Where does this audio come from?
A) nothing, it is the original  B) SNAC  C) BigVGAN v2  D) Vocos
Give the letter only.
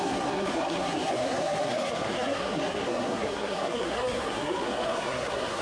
B